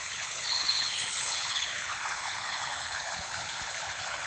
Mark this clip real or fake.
fake